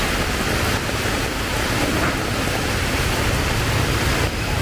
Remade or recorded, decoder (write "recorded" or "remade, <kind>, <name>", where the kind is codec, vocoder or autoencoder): recorded